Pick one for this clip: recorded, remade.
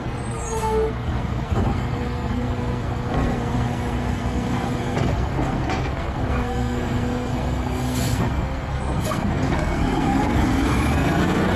remade